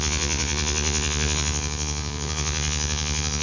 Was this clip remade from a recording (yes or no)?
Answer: yes